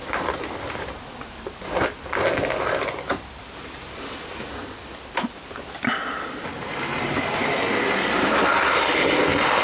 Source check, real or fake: real